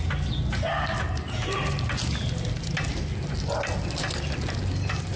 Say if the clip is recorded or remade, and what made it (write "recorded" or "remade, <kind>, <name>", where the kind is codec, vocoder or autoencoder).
recorded